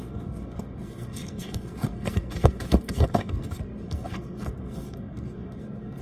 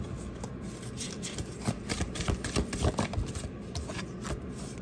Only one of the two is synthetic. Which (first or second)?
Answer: first